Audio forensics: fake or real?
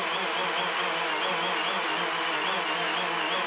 real